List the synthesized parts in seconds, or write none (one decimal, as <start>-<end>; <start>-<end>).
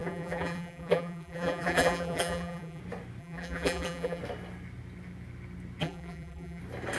0.0-2.8; 3.2-4.2; 5.8-6.6